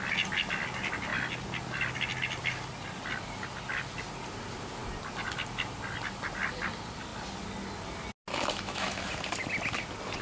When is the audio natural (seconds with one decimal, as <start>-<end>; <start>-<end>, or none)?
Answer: 0.0-8.3; 9.0-10.2